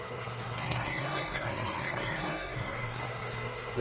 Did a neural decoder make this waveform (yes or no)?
yes